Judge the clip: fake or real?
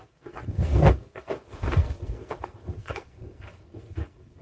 fake